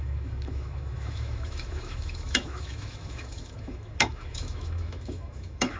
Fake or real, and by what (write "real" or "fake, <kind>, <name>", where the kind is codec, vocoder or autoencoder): fake, autoencoder, DAC-VAE